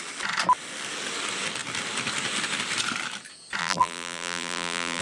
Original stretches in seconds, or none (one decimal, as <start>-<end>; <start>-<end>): 0.0-3.6